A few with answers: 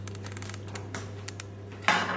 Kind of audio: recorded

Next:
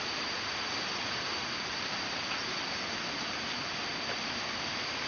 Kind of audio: recorded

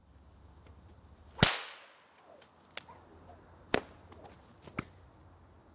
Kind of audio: recorded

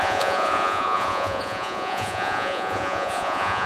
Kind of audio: remade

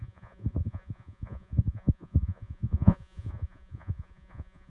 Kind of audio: remade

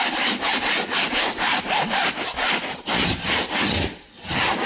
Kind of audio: recorded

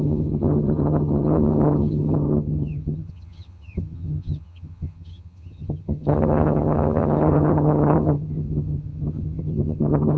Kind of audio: remade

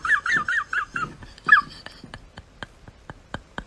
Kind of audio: recorded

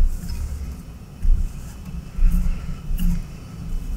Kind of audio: recorded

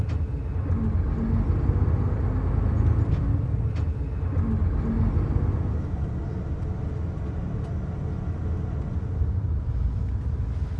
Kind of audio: recorded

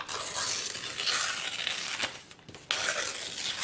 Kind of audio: recorded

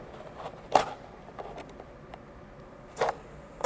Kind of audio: recorded